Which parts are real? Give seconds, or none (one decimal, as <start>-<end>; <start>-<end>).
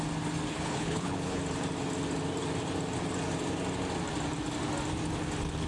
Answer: 0.0-0.5; 1.4-5.7